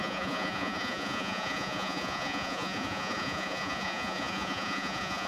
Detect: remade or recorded remade